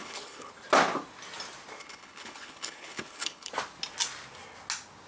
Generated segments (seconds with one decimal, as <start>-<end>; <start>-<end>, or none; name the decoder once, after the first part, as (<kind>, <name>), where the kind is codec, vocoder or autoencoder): 0.0-0.5 (codec, HILCodec); 1.8-3.5